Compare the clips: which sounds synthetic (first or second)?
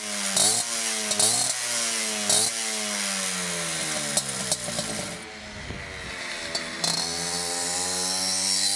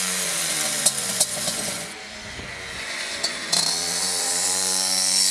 second